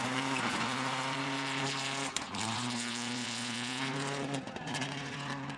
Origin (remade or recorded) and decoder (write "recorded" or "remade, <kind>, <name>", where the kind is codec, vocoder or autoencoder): remade, vocoder, Vocos